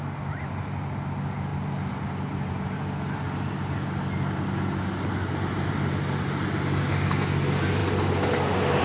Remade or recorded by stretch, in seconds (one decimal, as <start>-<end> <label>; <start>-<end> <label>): 0.0-8.8 recorded